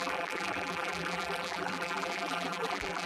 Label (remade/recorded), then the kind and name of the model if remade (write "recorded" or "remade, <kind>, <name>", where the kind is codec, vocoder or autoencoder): remade, vocoder, BigVGAN v2